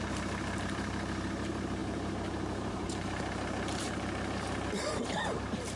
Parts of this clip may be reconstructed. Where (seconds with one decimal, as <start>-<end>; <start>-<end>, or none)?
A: 0.0-5.8